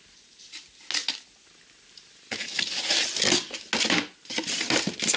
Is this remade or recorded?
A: recorded